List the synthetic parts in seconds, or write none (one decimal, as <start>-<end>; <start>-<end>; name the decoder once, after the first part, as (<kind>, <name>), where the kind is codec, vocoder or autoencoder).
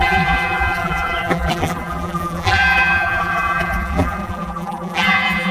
0.0-5.5 (vocoder, BigVGAN v2)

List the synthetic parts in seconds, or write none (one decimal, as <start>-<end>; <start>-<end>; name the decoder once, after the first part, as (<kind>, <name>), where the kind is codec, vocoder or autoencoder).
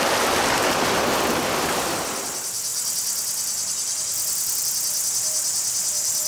none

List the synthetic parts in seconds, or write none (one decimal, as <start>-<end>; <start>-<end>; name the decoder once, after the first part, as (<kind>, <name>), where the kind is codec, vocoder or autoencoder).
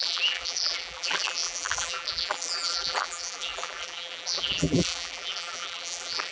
0.0-6.3 (vocoder, BigVGAN v2)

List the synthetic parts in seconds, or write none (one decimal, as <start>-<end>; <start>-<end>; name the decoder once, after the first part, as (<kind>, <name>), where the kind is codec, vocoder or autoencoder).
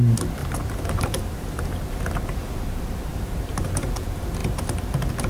0.4-1.9 (vocoder, BigVGAN v2); 3.1-4.0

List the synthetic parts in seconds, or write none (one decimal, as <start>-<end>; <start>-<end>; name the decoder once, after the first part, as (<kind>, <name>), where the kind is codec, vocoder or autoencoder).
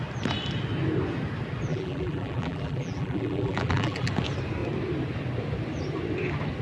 1.7-4.1 (vocoder, BigVGAN v2)